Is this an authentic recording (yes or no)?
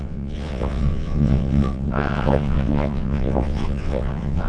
no